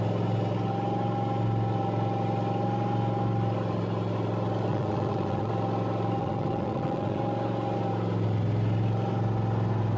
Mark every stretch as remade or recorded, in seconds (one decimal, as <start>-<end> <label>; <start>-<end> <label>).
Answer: 0.0-4.7 recorded; 4.7-5.5 remade; 5.5-6.2 recorded; 6.2-7.2 remade; 7.2-10.0 recorded